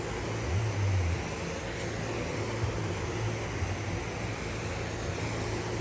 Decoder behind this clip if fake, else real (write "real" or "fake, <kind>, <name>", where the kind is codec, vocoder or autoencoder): real